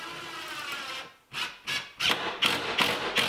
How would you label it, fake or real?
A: real